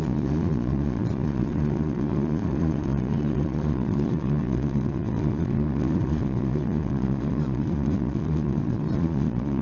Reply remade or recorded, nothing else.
remade